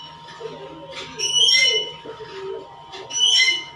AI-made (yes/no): no